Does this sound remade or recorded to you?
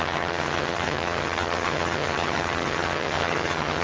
remade